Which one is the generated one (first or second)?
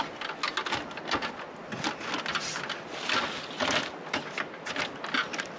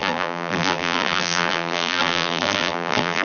second